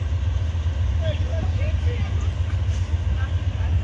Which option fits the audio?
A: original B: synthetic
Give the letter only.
A